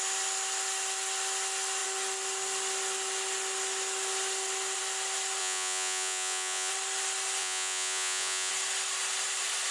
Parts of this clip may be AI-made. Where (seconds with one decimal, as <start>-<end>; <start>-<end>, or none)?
5.4-6.7; 7.4-8.5